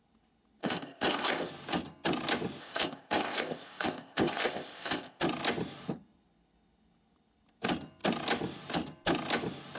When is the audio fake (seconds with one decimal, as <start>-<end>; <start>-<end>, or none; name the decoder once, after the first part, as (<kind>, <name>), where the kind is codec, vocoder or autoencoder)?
0.6-1.5 (codec, ZipCodec); 2.6-5.2